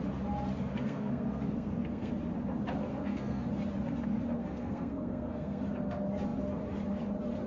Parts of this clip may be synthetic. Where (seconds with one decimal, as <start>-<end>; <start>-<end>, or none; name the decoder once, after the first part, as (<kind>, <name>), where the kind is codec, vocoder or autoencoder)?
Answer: 0.7-2.1 (codec, SNAC); 2.9-3.5; 4.4-5.6